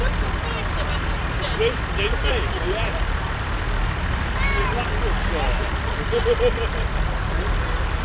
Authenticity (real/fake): real